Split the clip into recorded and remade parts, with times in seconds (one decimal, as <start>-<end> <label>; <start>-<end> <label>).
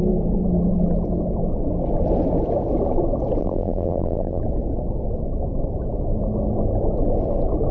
0.0-3.4 recorded; 3.4-4.4 remade; 4.4-7.7 recorded